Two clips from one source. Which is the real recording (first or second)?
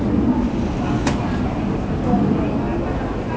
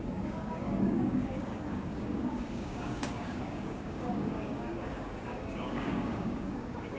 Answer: first